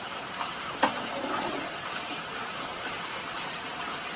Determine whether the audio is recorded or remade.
remade